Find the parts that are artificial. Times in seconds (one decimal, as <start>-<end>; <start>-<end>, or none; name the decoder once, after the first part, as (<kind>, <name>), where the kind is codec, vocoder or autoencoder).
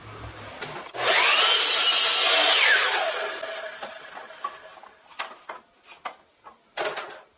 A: none